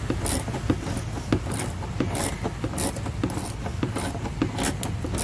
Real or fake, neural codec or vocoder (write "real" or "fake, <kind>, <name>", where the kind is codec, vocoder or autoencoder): real